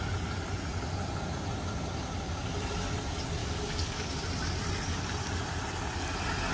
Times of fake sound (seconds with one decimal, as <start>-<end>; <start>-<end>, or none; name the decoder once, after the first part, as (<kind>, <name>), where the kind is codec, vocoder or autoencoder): 3.4-4.2 (codec, DAC)